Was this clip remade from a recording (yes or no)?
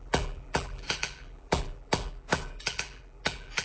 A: yes